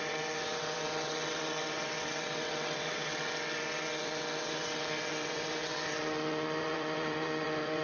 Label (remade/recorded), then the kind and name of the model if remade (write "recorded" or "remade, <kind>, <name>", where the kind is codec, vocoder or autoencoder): remade, vocoder, WaveNeXt